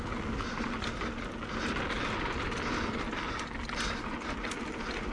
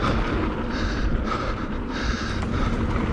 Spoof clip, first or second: second